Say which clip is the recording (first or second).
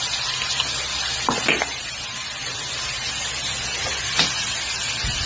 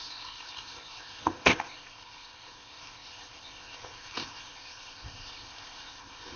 first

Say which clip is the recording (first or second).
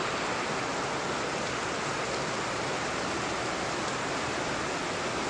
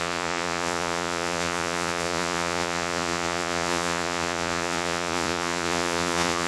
first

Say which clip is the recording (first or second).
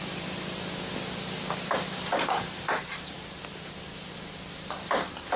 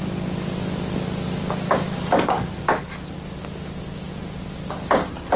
second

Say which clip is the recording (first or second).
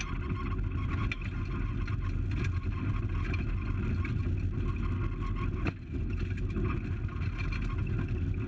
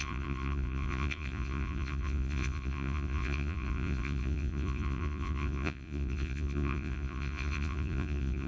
first